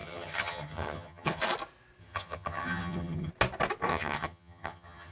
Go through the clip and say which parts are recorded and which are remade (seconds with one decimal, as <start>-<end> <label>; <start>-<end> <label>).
0.0-1.4 remade; 1.4-2.0 recorded; 2.0-3.3 remade; 3.3-3.9 recorded; 3.9-5.1 remade